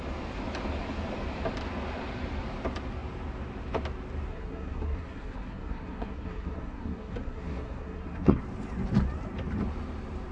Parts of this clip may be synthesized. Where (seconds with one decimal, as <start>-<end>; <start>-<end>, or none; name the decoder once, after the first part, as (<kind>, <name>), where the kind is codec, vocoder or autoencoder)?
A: 4.3-8.4 (codec, SNAC)